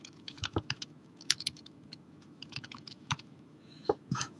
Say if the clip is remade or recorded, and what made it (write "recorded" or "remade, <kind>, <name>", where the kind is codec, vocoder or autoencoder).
remade, autoencoder, DAC-VAE